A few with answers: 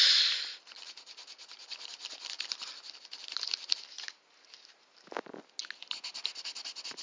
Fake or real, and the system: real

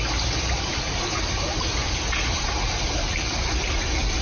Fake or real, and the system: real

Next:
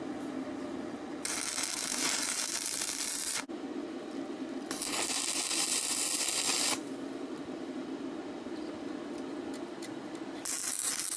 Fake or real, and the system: real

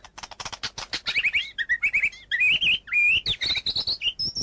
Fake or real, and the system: real